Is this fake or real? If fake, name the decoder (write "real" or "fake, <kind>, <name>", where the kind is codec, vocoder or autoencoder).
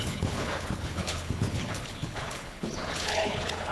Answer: fake, codec, HILCodec